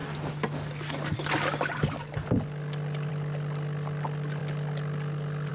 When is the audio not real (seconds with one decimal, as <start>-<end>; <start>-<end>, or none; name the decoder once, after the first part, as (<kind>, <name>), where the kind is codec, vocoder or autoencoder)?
none